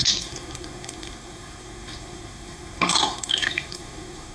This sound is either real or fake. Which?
fake